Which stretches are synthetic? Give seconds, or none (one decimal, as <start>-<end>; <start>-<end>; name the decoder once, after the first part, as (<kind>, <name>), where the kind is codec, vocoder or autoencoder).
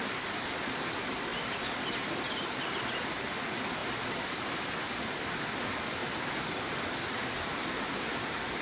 1.3-2.8 (vocoder, BigVGAN v2); 3.8-5.1